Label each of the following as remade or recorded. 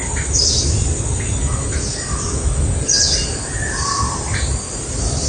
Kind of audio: recorded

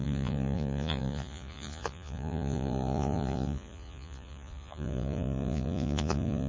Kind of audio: remade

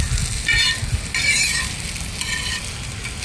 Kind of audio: recorded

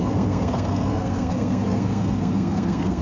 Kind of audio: remade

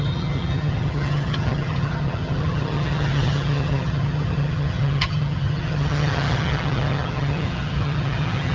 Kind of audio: remade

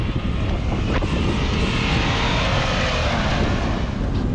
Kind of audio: recorded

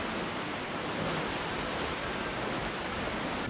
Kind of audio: recorded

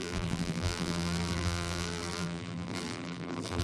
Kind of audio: remade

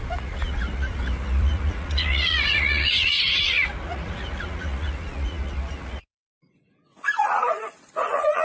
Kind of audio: remade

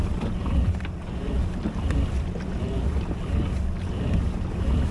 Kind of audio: remade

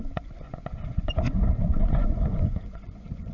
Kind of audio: remade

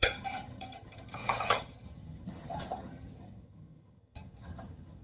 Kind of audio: remade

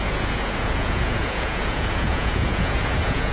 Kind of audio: remade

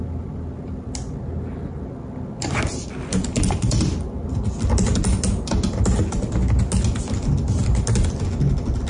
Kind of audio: recorded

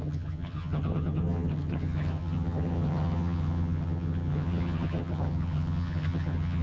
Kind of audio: remade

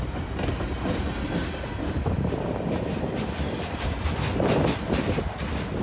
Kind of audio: recorded